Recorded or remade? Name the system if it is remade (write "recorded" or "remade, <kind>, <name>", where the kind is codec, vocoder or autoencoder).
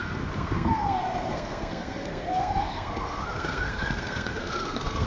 remade, codec, SNAC